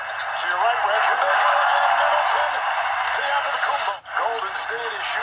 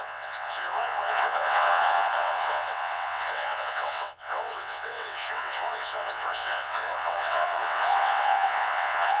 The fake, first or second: second